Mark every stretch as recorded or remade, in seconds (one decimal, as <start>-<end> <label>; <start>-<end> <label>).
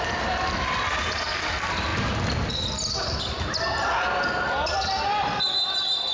0.0-6.1 recorded